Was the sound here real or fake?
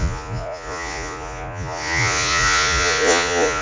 fake